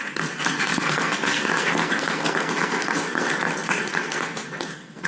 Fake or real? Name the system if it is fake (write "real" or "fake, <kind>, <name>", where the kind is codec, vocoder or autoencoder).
fake, codec, SNAC